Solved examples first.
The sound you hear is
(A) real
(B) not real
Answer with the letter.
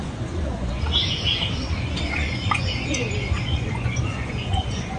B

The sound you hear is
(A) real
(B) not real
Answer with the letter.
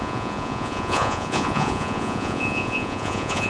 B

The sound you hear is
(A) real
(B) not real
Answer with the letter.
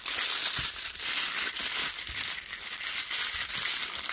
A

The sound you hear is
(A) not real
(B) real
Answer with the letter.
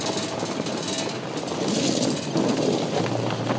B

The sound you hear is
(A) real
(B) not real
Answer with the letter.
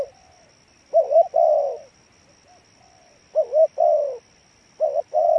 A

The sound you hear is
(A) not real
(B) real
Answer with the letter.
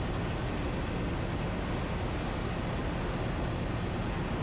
B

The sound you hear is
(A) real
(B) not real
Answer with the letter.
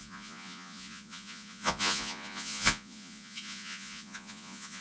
B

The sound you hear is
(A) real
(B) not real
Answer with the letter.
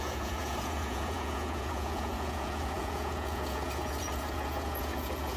B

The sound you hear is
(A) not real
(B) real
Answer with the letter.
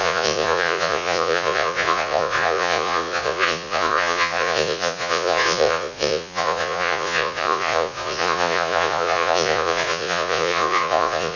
A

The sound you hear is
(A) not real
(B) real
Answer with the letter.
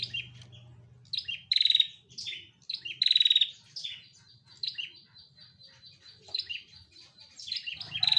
B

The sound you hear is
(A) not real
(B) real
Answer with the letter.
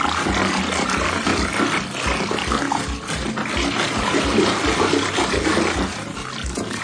B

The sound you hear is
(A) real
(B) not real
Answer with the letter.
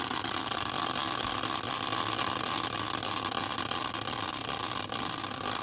A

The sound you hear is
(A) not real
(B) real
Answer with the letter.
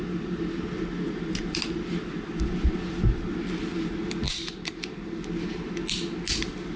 B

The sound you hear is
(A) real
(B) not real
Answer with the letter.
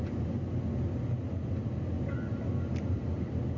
A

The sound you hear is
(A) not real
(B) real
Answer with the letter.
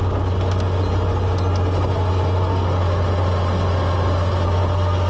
B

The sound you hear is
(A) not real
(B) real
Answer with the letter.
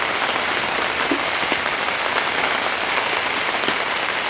B